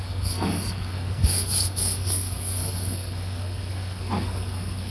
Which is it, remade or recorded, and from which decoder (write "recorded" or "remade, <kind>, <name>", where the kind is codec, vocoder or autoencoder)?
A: remade, codec, SNAC